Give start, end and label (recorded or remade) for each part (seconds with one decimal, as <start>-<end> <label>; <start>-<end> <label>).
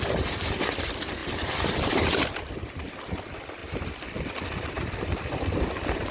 0.0-3.6 recorded; 3.6-5.4 remade; 5.4-6.1 recorded